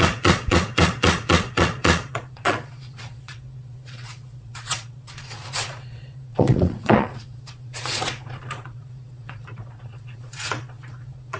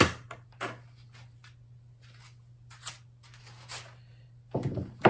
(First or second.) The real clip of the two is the second